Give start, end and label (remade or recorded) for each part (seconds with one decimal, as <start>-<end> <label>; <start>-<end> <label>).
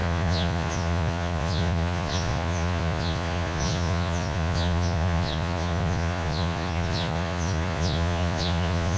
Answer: 0.0-9.0 remade